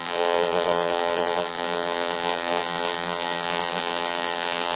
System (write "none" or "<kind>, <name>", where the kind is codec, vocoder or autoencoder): vocoder, BigVGAN v2